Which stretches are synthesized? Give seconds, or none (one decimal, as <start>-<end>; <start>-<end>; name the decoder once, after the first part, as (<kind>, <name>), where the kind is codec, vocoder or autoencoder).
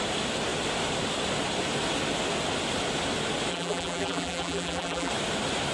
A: 3.5-5.1 (vocoder, BigVGAN v2)